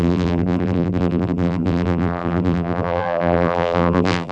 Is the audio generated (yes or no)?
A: yes